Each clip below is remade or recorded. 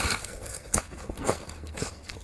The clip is remade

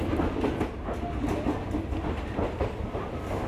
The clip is recorded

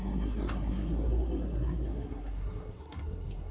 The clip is remade